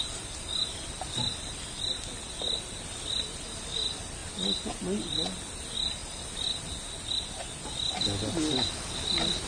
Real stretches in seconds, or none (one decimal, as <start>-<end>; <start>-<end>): 0.0-9.5